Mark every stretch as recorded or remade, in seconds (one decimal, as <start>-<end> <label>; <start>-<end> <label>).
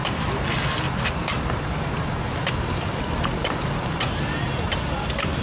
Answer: 0.0-5.4 recorded